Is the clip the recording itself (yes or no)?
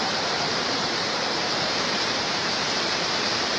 no